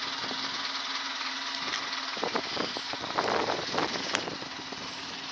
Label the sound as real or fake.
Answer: real